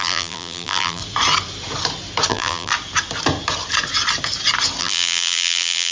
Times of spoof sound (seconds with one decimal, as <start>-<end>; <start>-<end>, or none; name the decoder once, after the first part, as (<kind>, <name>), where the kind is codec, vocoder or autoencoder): 0.0-1.0 (vocoder, BigVGAN v2); 2.3-2.7; 4.8-5.9